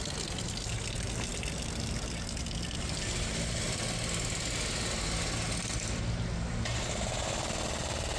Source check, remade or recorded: recorded